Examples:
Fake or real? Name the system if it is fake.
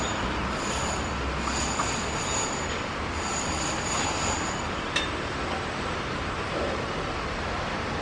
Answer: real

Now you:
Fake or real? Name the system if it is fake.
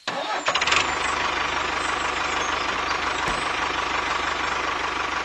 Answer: fake, vocoder, BigVGAN v2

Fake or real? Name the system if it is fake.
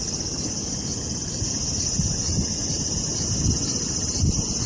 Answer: real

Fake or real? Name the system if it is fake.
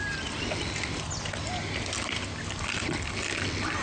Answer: real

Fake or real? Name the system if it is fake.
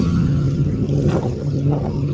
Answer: fake, vocoder, HiFi-GAN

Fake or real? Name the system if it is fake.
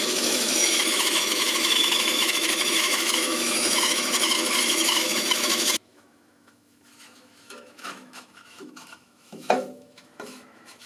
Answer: fake, autoencoder, DAC-VAE